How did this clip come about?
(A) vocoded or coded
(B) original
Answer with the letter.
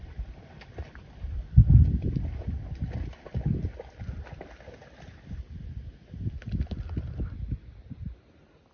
B